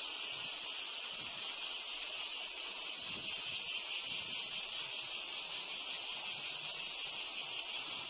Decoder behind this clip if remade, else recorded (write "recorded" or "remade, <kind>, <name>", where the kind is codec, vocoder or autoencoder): recorded